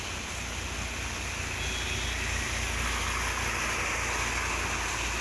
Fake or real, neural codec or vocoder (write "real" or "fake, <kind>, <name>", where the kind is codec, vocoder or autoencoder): real